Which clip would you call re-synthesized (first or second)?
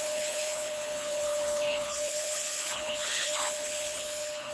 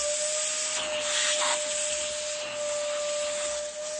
first